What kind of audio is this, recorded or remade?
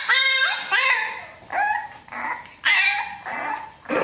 recorded